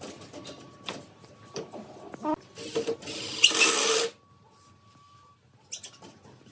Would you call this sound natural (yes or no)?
yes